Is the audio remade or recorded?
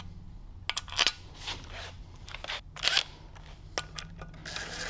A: recorded